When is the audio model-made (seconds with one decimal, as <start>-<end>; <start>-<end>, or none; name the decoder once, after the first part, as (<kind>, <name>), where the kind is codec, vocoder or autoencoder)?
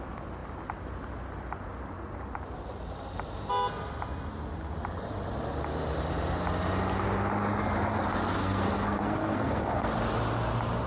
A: 8.4-9.9 (codec, SNAC)